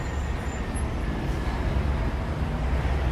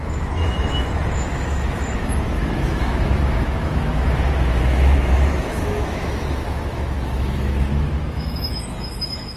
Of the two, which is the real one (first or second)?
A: first